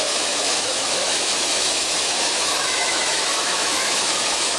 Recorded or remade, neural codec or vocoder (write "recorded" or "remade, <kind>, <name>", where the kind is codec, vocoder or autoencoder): remade, autoencoder, DAC-VAE